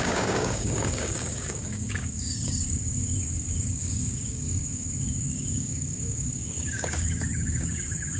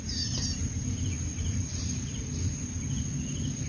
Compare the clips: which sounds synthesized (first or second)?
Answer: first